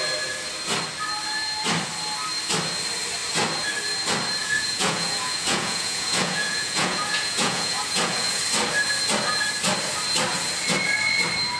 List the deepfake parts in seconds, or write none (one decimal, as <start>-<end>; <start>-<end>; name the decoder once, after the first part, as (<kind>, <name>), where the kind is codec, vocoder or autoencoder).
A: 4.4-8.4 (vocoder, Vocos)